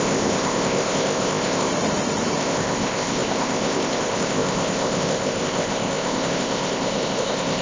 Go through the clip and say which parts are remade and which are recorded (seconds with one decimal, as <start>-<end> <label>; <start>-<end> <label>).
0.0-1.7 remade; 1.7-2.4 recorded; 2.4-7.6 remade